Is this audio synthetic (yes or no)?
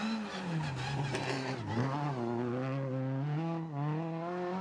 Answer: no